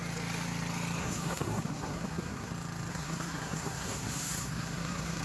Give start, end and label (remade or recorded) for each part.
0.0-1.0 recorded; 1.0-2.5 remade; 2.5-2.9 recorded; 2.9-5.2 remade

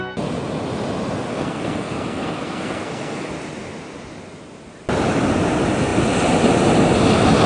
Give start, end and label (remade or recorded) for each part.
0.0-1.3 recorded; 1.3-3.3 remade; 3.3-7.5 recorded

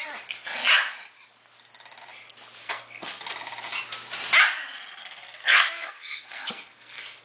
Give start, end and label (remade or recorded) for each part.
0.0-2.6 recorded; 2.6-3.3 remade; 3.3-5.0 recorded; 5.0-7.2 remade